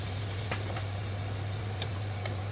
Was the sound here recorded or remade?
recorded